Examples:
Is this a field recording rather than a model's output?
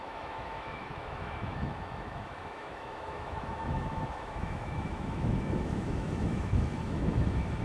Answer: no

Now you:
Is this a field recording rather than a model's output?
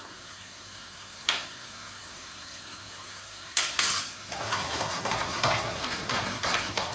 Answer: no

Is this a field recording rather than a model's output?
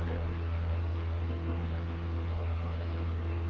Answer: no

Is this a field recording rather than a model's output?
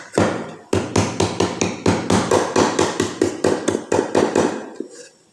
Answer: yes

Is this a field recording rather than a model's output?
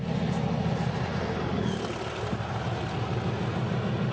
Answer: yes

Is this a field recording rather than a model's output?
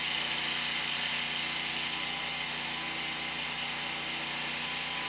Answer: yes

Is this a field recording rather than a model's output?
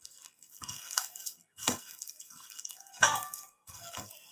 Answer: no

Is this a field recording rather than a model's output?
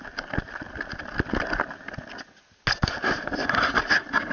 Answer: yes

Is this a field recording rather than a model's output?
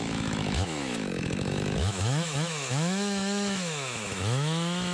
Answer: no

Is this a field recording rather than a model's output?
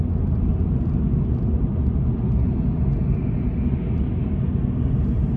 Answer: yes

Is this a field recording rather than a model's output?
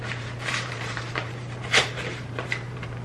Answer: no